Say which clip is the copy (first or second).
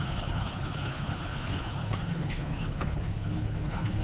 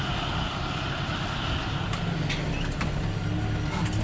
first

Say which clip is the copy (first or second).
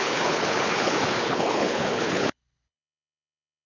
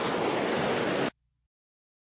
first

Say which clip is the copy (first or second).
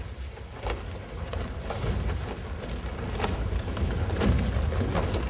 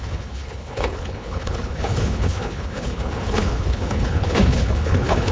second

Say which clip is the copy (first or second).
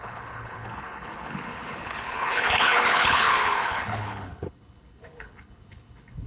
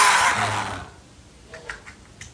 first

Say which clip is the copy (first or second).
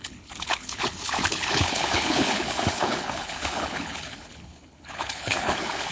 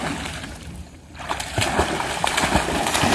first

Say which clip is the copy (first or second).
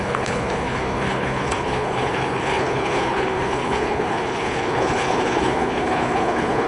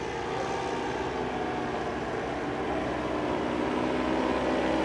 first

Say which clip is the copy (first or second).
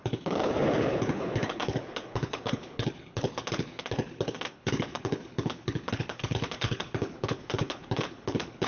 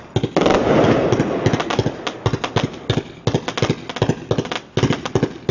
first